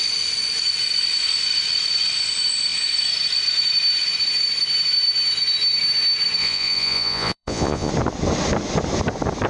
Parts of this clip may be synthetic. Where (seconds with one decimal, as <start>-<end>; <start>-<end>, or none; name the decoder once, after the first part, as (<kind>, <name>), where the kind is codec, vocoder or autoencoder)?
6.4-7.9 (vocoder, Vocos)

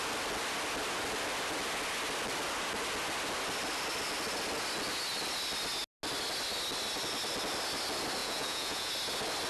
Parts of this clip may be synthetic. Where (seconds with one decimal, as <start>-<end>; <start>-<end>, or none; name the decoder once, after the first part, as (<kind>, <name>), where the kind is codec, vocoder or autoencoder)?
8.2-8.9 (vocoder, Vocos)